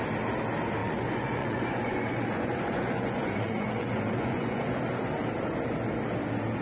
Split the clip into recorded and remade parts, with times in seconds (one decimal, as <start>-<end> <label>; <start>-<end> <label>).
0.0-0.8 recorded; 0.8-4.8 remade; 4.8-6.6 recorded